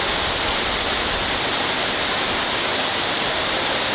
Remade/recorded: recorded